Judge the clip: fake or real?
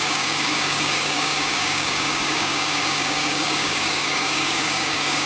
fake